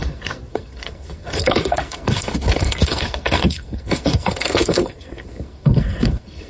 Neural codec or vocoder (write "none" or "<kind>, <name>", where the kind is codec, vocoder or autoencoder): codec, SNAC